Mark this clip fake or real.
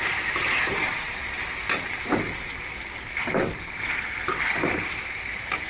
real